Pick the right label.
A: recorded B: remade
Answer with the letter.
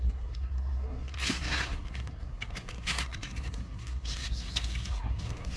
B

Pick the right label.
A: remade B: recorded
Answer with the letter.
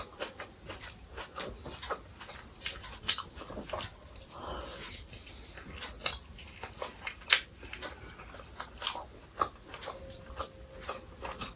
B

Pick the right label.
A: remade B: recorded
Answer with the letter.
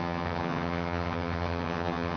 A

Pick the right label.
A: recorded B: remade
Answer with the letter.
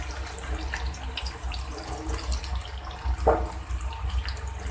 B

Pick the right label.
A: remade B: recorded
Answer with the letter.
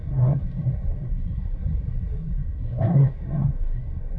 A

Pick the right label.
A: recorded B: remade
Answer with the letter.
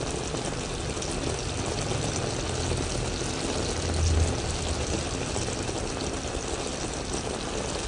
A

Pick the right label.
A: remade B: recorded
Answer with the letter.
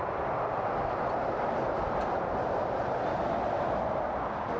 B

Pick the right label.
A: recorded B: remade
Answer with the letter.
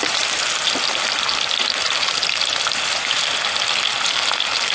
A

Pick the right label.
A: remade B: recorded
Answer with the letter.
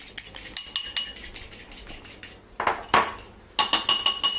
B